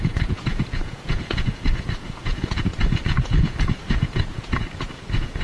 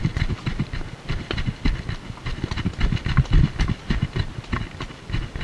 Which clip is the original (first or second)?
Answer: second